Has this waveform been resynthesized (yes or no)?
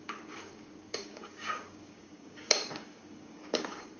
yes